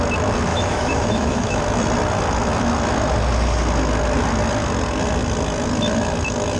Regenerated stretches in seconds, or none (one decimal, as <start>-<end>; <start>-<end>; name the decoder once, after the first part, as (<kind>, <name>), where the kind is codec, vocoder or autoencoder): 0.5-1.6 (autoencoder, DAC-VAE)